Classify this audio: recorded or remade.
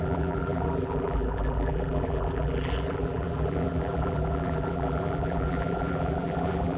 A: remade